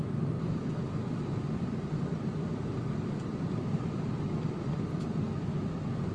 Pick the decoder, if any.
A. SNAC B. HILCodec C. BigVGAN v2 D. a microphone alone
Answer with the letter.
D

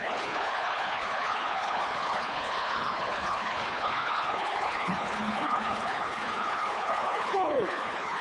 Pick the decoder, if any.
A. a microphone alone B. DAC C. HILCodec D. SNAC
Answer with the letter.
C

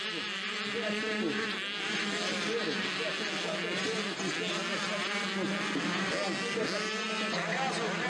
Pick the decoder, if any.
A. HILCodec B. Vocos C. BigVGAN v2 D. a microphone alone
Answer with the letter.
D